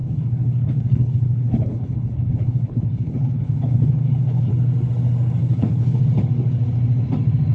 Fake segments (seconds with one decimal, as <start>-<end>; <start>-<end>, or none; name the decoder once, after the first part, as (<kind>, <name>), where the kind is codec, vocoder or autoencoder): 0.0-4.5 (codec, HILCodec); 5.4-6.0